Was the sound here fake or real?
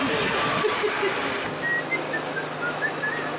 real